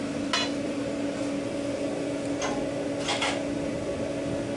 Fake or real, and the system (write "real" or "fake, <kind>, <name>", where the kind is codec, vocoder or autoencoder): real